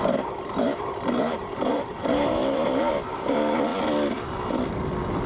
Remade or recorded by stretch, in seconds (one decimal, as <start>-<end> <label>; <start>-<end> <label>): 0.0-3.7 remade; 3.7-5.3 recorded